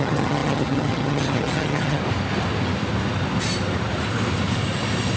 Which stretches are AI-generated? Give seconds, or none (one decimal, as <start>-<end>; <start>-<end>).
0.0-2.0